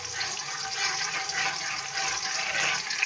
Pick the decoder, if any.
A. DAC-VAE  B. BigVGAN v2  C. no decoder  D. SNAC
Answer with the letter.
C